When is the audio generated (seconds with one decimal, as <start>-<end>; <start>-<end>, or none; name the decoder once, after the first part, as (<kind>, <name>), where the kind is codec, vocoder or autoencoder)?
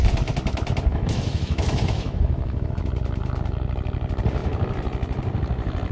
0.9-2.8 (autoencoder, DAC-VAE)